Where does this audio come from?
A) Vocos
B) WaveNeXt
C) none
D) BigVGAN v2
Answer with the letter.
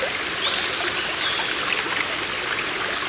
C